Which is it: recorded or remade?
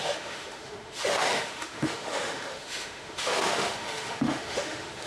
remade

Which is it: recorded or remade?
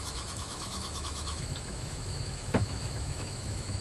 remade